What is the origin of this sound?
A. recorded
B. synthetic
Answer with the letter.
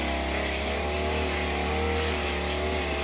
A